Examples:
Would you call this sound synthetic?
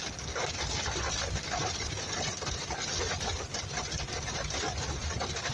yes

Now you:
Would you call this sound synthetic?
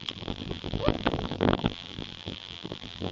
yes